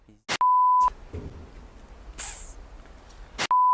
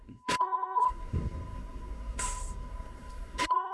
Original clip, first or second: first